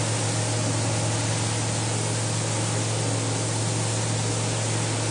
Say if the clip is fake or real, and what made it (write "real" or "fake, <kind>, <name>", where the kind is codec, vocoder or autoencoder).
real